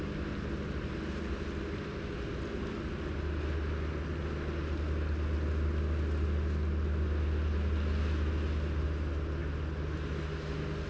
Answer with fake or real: real